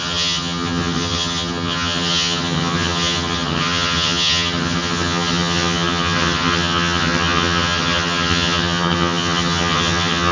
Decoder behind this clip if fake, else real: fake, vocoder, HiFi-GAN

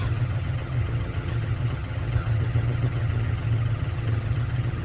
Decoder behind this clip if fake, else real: fake, vocoder, HiFi-GAN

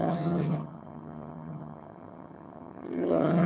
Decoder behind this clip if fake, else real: fake, vocoder, HiFi-GAN